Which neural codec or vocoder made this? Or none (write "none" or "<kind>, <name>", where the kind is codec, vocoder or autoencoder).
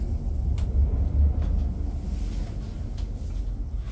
none